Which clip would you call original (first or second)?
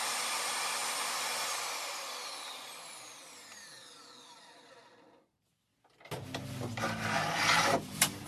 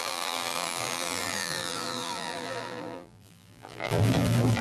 first